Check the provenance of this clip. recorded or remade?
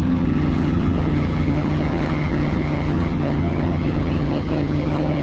remade